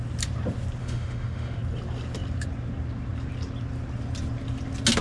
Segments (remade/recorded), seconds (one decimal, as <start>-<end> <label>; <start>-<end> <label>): 0.0-0.8 recorded; 0.8-1.6 remade; 1.6-5.0 recorded